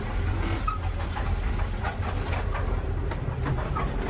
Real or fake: real